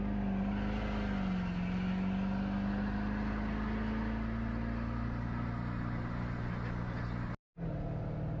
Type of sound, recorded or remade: recorded